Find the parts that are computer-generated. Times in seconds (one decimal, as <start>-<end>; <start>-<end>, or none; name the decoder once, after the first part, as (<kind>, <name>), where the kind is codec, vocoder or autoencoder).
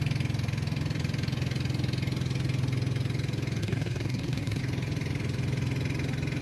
3.6-4.6 (codec, SNAC)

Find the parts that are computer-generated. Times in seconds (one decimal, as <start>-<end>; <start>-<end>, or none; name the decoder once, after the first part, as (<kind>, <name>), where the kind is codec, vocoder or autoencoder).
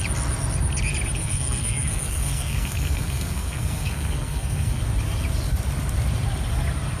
1.2-4.8 (codec, SNAC)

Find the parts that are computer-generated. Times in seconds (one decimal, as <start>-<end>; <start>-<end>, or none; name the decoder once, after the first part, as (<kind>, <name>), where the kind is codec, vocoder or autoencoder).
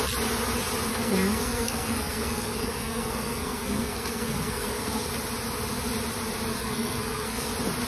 0.9-5.1 (codec, SNAC); 6.5-7.5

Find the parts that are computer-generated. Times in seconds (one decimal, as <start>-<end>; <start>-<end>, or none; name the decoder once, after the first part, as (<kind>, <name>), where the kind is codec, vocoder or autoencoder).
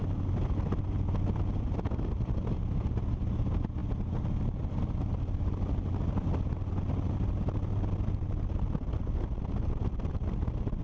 none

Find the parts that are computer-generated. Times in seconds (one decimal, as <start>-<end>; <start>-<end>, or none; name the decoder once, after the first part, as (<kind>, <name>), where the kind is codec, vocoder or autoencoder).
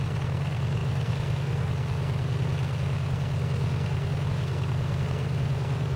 0.0-6.0 (codec, SNAC)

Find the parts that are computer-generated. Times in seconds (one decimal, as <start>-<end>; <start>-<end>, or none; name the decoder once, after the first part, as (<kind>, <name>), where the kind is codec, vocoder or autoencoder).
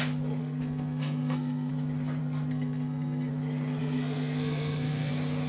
0.4-1.7 (codec, SNAC); 2.2-3.3; 3.8-5.1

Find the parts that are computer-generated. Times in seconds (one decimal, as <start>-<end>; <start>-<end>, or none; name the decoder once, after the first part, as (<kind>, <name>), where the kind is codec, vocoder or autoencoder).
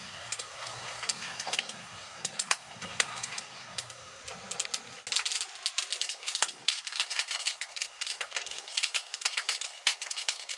0.0-4.2 (codec, SNAC); 6.0-10.6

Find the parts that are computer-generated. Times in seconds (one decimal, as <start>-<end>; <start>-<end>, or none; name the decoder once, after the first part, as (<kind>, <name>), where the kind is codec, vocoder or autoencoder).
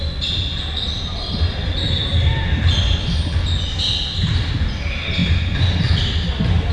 none